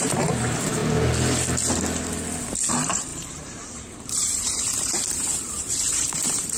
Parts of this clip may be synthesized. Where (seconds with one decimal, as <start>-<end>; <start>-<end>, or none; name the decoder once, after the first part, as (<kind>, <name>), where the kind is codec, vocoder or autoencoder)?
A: 0.0-0.8 (vocoder, BigVGAN v2); 2.7-6.6